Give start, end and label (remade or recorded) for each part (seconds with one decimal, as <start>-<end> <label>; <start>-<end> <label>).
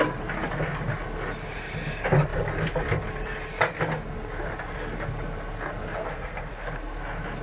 0.0-6.0 recorded; 6.0-6.5 remade; 6.5-7.4 recorded